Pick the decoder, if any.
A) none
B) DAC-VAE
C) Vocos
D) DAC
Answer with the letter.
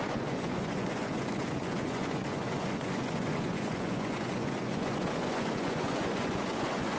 C